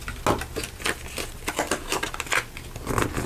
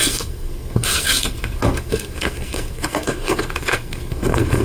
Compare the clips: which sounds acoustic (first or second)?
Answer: first